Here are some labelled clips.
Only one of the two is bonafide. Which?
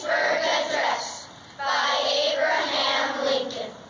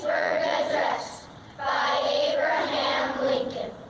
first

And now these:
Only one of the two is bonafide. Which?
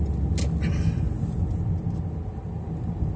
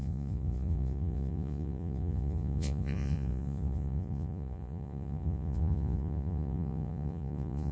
first